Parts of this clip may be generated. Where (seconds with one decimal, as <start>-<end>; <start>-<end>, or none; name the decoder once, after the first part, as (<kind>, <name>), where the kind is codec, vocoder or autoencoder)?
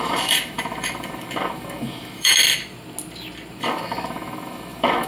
0.0-2.4 (autoencoder, DAC-VAE); 3.6-5.1